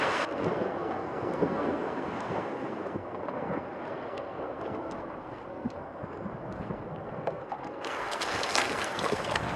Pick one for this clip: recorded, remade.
remade